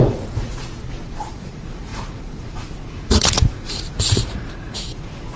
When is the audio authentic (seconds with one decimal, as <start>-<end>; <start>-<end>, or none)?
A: 0.5-1.3